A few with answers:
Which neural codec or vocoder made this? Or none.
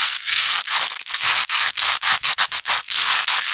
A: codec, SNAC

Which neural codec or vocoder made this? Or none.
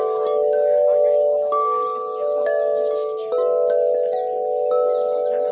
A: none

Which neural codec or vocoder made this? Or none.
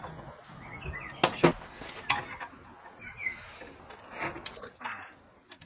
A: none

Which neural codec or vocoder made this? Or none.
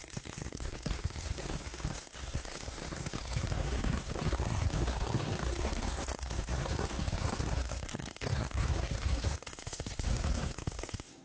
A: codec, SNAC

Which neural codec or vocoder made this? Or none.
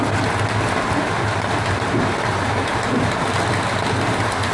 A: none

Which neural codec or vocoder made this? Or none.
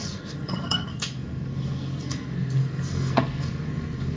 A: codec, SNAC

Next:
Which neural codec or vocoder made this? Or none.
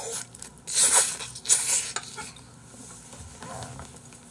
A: none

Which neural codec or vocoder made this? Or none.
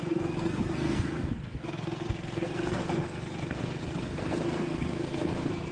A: codec, SNAC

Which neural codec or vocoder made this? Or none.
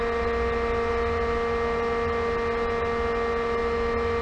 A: none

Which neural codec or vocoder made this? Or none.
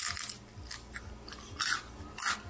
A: none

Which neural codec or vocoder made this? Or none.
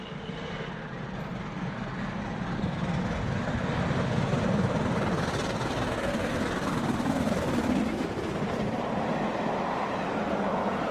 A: none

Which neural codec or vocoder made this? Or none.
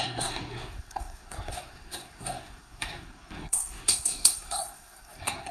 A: codec, SNAC